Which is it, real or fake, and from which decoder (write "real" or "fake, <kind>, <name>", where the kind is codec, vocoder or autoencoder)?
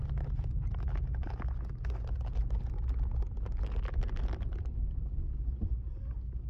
real